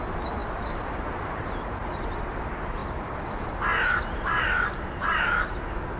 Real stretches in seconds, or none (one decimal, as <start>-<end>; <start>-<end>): 2.8-4.0